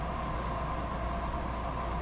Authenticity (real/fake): real